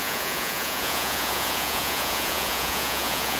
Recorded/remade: remade